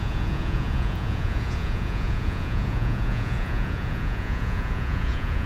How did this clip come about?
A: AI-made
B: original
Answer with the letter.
A